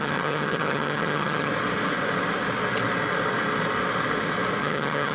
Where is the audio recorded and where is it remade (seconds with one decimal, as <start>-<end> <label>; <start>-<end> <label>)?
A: 0.0-1.5 remade; 1.5-4.6 recorded; 4.6-5.1 remade